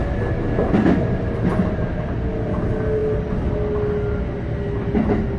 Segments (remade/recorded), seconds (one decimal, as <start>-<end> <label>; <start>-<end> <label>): 0.0-5.4 recorded